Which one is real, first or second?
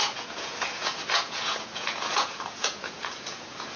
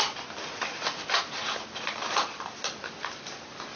second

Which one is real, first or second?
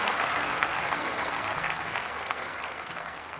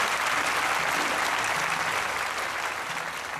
second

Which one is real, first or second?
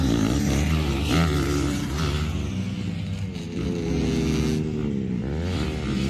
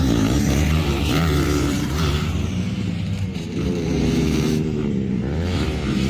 first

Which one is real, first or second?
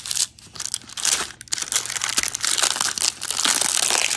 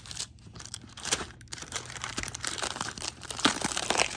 first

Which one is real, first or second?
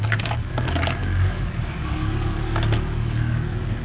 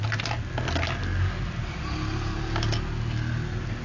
second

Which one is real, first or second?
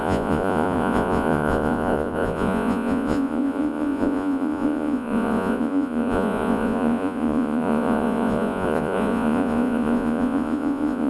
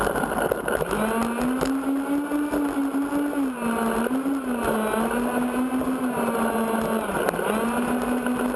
second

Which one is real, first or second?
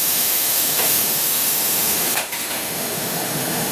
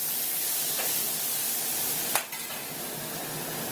second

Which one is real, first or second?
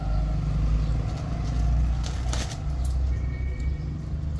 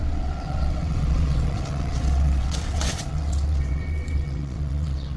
first